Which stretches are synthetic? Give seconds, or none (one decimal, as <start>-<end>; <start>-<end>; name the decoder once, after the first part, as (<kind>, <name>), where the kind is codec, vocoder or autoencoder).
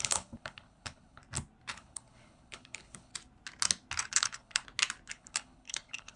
0.0-1.2 (codec, HILCodec); 1.7-3.1; 4.1-4.6; 5.1-6.2